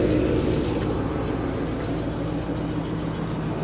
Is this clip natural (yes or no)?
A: yes